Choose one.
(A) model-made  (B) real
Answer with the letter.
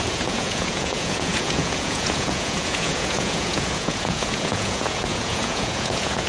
A